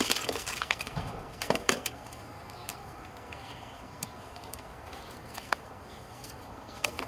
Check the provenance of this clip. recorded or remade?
remade